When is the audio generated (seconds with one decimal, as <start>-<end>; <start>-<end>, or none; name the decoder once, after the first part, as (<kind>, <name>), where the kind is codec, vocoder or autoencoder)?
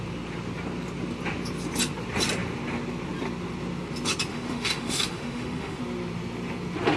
4.3-5.8 (autoencoder, DAC-VAE)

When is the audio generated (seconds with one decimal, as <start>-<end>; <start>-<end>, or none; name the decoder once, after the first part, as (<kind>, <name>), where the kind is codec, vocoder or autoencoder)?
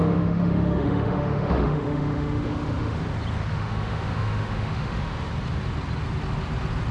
0.0-3.0 (autoencoder, DAC-VAE); 3.5-5.3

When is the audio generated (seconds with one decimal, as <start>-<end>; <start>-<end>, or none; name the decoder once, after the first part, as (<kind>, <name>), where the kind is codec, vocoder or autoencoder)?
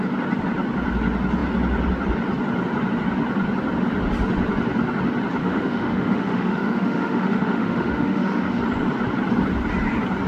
5.4-8.6 (autoencoder, DAC-VAE)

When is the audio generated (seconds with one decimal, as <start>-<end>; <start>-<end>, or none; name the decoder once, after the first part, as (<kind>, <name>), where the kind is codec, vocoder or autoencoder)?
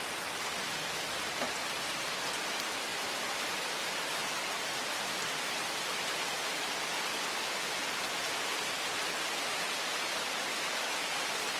10.5-11.1 (autoencoder, DAC-VAE)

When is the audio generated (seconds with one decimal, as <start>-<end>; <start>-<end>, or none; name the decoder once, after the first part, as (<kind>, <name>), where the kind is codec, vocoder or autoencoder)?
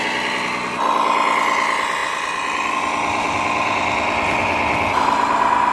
none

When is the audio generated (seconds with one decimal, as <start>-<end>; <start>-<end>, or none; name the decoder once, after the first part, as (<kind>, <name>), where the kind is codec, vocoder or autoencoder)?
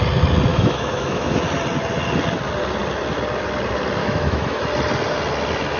0.5-1.4 (autoencoder, DAC-VAE); 4.0-4.6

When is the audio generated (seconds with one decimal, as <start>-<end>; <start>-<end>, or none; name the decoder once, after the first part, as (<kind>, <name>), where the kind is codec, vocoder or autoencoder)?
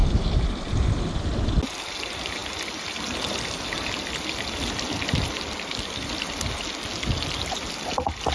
none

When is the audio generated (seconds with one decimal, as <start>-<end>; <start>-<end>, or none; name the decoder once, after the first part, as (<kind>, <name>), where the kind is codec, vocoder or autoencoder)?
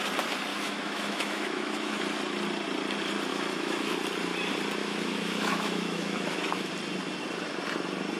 0.5-2.0 (autoencoder, DAC-VAE); 3.3-3.9; 4.8-6.7